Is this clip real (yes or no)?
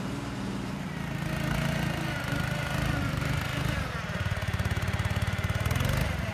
yes